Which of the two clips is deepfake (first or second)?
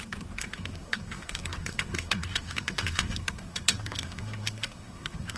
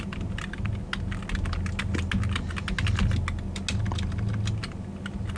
first